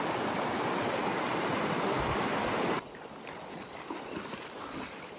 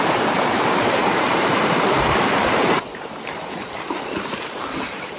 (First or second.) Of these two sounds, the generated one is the second